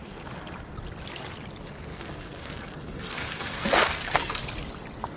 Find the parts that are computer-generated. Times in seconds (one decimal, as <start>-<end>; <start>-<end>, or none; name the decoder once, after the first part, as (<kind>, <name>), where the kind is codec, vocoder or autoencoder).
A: 1.9-4.4 (codec, SNAC)